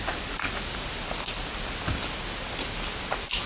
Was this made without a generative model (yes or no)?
yes